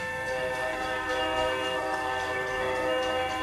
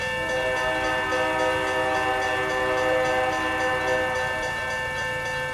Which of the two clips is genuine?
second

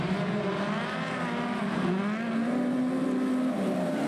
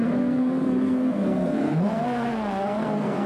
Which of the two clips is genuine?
first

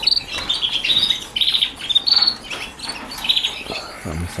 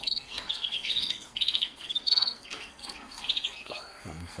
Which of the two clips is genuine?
first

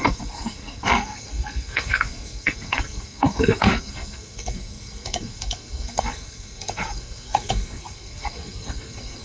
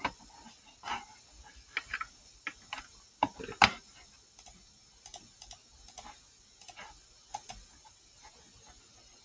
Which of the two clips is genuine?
second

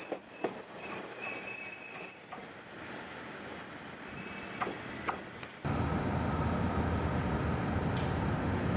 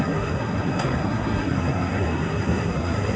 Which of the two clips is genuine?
first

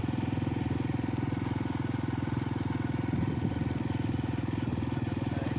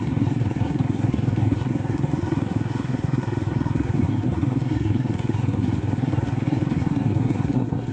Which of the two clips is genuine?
first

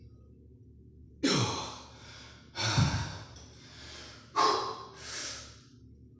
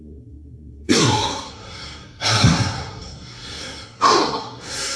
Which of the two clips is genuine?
first